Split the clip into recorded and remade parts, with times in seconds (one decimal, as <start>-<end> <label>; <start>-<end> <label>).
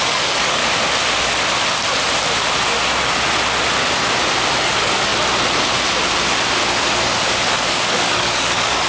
0.0-0.6 remade; 0.6-4.6 recorded; 4.6-5.1 remade; 5.1-7.5 recorded; 7.5-8.9 remade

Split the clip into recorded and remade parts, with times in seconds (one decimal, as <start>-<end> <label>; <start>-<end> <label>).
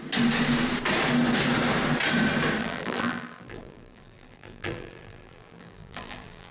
0.0-2.6 recorded; 2.6-6.5 remade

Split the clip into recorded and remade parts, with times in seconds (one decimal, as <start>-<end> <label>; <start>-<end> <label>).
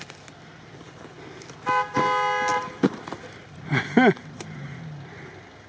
0.0-2.5 recorded; 2.5-4.7 remade; 4.7-5.7 recorded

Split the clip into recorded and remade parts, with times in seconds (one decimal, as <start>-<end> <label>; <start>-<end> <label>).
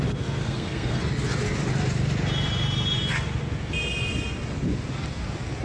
0.0-0.4 recorded; 0.4-1.0 remade; 1.0-5.6 recorded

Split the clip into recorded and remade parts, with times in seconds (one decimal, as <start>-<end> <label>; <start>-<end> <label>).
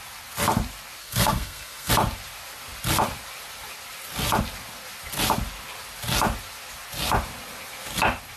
0.0-1.0 recorded; 1.0-1.9 remade; 1.9-8.4 recorded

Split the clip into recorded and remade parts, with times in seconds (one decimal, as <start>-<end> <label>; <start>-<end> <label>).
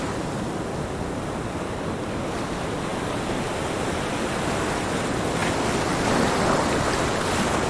0.0-7.7 recorded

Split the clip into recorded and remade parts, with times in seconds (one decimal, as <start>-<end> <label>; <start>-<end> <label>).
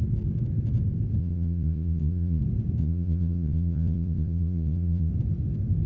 0.0-1.2 recorded; 1.2-2.4 remade; 2.4-2.8 recorded; 2.8-5.1 remade; 5.1-5.9 recorded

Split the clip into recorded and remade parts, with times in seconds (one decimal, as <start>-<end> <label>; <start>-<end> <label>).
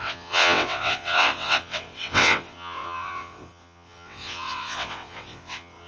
0.0-5.9 remade